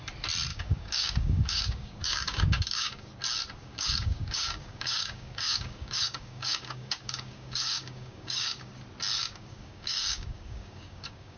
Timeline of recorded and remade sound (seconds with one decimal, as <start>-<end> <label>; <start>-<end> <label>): 0.0-0.5 recorded; 0.5-3.1 remade; 3.1-3.6 recorded; 3.6-8.7 remade; 8.7-9.2 recorded; 9.2-11.4 remade